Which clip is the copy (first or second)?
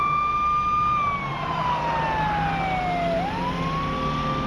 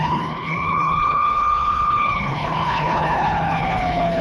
second